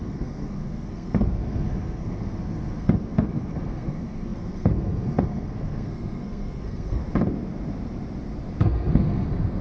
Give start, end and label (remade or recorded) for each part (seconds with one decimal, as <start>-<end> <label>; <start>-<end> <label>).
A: 0.0-7.0 remade; 7.0-8.6 recorded; 8.6-9.6 remade

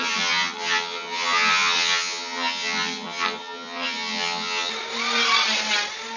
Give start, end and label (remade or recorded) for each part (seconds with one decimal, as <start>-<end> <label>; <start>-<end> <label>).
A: 0.0-4.7 remade; 4.7-6.2 recorded

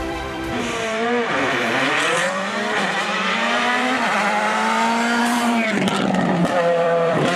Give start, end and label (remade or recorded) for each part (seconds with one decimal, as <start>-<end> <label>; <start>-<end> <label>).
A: 0.0-7.4 remade

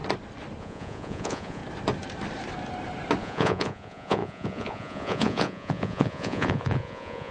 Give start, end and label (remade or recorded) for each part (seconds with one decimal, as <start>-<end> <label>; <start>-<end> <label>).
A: 0.0-0.6 recorded; 0.6-1.6 remade; 1.6-3.2 recorded; 3.2-7.3 remade

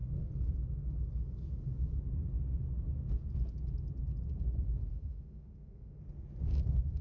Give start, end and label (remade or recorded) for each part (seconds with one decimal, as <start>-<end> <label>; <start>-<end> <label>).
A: 0.0-4.9 recorded; 4.9-6.0 remade; 6.0-7.0 recorded